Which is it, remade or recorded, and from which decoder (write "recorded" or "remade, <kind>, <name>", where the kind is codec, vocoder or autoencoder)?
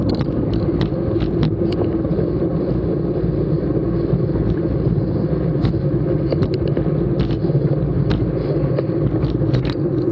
recorded